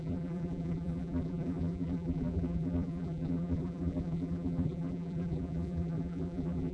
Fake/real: fake